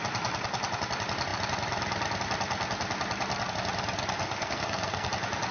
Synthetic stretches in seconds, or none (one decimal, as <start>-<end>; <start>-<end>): 4.2-5.1